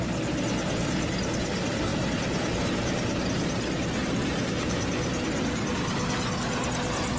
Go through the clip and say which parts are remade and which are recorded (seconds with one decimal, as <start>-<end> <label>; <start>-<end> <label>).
0.0-4.2 recorded; 4.2-5.4 remade; 5.4-7.2 recorded